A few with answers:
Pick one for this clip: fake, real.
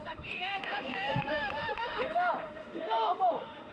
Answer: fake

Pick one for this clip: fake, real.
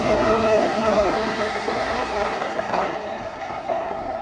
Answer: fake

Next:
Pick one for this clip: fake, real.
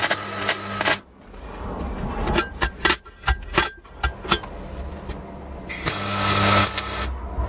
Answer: real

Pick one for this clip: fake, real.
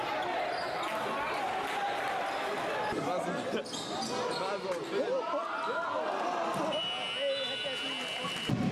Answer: real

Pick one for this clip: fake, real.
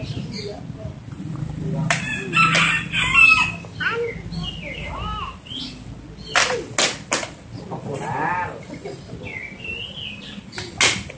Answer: real